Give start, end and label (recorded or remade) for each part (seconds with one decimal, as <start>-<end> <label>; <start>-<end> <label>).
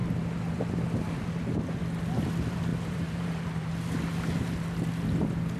0.0-2.7 recorded; 2.7-3.7 remade; 3.7-5.6 recorded